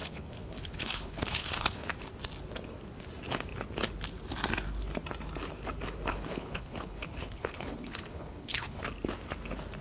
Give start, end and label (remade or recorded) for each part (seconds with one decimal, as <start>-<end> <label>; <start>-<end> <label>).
0.0-1.9 remade; 1.9-6.1 recorded; 6.1-8.8 remade; 8.8-9.8 recorded